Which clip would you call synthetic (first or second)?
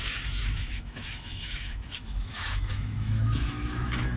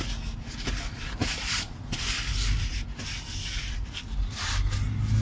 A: first